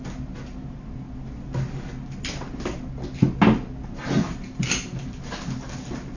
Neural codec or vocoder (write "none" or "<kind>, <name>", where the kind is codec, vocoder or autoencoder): none